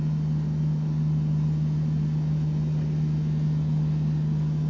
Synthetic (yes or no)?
no